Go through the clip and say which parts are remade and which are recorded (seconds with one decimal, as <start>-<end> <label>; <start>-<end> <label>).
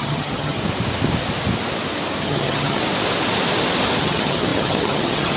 0.0-0.6 remade; 0.6-2.2 recorded; 2.2-2.8 remade; 2.8-4.0 recorded; 4.0-5.4 remade